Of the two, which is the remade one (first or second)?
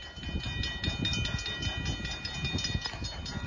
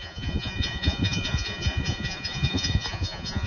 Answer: second